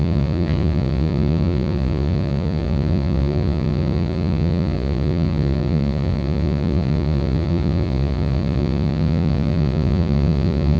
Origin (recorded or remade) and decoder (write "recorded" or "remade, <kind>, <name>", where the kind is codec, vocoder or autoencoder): remade, vocoder, Vocos